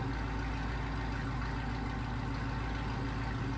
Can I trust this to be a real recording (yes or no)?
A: yes